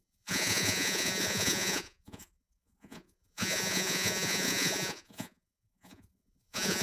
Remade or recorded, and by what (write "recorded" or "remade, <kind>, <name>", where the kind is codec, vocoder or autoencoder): remade, vocoder, Vocos